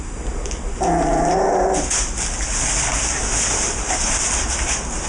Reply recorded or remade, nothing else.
recorded